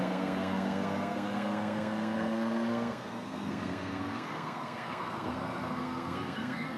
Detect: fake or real fake